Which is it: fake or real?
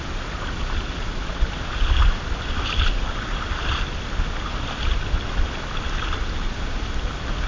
real